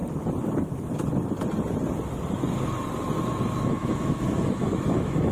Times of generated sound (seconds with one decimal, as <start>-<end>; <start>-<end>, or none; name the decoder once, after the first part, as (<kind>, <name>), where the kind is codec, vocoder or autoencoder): 3.2-5.3 (autoencoder, DAC-VAE)